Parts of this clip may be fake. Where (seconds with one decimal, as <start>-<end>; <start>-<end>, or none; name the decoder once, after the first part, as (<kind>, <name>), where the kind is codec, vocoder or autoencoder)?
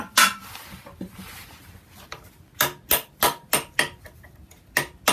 none